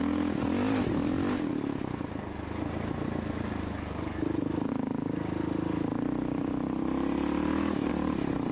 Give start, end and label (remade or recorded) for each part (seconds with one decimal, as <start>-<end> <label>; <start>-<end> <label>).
0.0-8.5 recorded